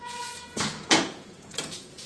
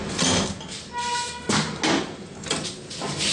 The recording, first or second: second